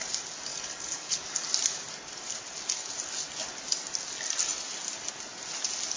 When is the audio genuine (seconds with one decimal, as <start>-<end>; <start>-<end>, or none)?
0.0-0.5; 1.2-6.0